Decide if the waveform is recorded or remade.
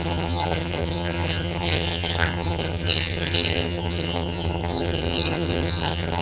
remade